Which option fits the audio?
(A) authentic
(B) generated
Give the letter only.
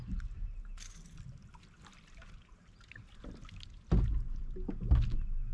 A